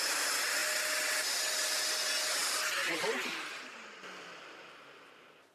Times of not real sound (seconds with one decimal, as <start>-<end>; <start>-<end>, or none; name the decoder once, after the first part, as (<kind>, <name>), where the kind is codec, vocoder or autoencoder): none